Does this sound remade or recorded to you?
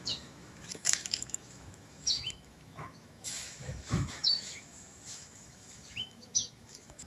remade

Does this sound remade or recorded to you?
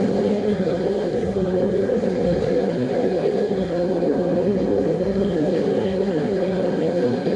remade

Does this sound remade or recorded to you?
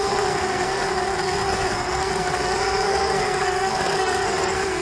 remade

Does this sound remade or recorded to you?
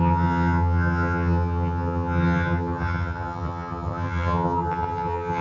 remade